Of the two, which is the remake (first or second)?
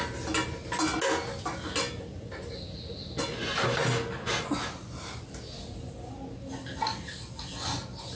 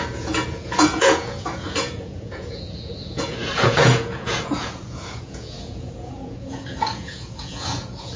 second